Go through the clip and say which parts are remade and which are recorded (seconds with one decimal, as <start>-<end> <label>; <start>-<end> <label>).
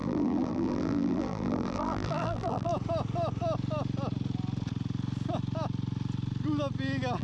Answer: 0.0-2.7 remade; 2.7-7.2 recorded